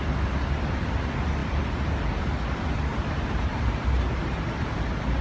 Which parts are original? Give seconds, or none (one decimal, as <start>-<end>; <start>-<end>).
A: 0.0-2.9